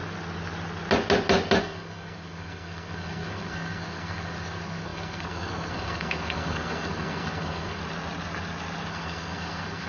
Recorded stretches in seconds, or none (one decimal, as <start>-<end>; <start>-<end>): 0.0-1.6; 7.8-8.9